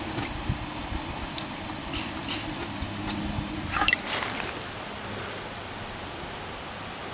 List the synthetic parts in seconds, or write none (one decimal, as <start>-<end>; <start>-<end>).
none